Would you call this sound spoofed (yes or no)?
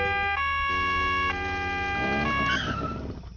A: no